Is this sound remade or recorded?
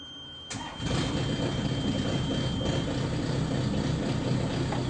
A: recorded